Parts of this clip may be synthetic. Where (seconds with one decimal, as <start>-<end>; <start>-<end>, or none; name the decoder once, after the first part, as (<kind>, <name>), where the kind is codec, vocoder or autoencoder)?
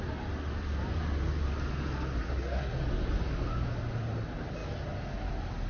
2.2-2.8 (codec, SNAC)